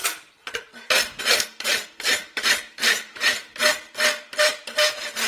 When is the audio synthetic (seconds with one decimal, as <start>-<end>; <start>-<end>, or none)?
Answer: 0.0-1.2; 2.2-3.6